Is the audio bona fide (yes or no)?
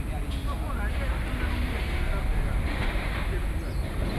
yes